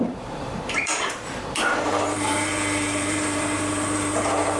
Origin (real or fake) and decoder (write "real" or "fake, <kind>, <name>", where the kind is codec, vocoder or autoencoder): fake, vocoder, BigVGAN v2